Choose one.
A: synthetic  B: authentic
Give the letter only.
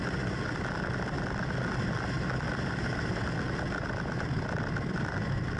B